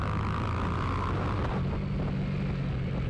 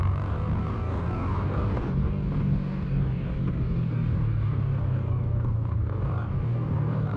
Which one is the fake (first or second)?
second